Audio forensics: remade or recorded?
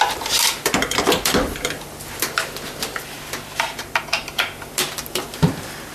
remade